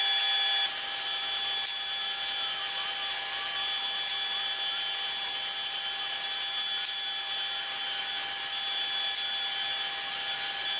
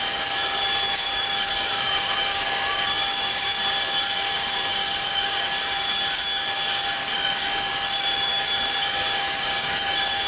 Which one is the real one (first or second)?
first